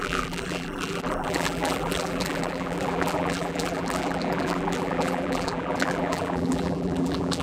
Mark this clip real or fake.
fake